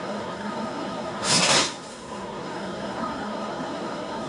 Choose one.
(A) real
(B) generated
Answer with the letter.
B